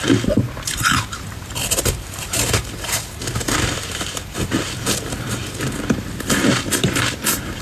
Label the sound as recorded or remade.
remade